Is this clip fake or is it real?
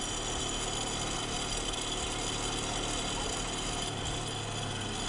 real